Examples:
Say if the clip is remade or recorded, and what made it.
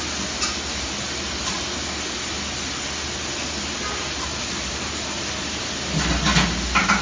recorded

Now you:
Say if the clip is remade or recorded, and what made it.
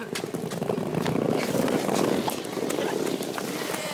recorded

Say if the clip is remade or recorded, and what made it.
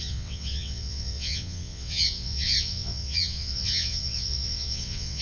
remade, vocoder, WaveNeXt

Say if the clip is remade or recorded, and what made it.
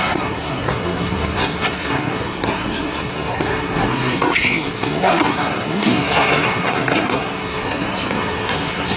remade, codec, SNAC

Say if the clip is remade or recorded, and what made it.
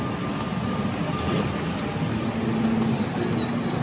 recorded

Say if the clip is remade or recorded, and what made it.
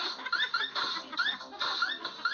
recorded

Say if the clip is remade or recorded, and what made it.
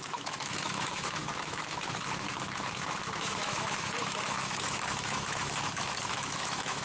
remade, autoencoder, DAC-VAE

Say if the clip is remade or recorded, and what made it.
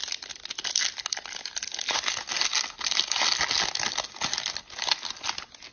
recorded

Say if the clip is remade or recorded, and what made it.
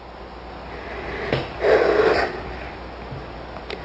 recorded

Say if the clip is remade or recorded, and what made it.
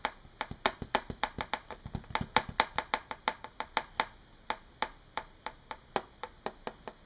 recorded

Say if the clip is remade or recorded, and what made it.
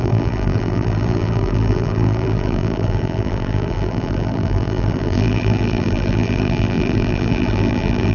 remade, vocoder, BigVGAN v2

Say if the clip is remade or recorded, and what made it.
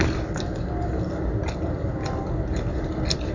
recorded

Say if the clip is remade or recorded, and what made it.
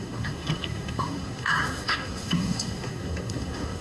remade, codec, SNAC